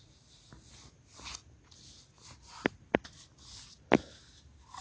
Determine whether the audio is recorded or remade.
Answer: recorded